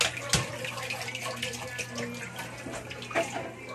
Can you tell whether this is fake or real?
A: real